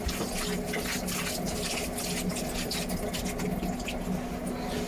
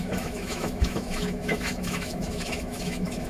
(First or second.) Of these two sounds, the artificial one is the second